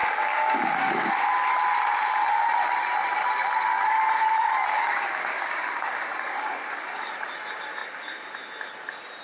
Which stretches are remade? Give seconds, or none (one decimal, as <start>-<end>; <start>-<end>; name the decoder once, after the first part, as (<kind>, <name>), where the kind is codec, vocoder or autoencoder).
0.0-1.1 (codec, DAC); 4.7-7.1